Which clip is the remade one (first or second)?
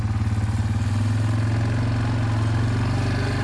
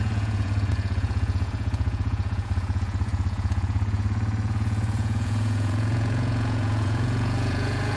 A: second